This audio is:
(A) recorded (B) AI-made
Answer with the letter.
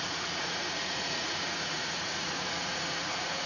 B